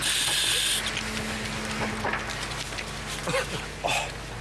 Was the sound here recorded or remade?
recorded